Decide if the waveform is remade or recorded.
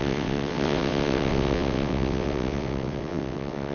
remade